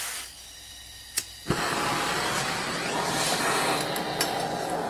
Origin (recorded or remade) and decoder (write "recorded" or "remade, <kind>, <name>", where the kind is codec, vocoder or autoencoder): recorded